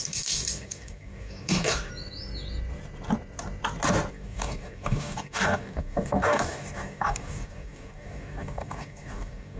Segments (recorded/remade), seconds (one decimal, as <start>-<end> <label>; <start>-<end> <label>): 0.0-1.9 remade; 1.9-4.1 recorded; 4.1-9.6 remade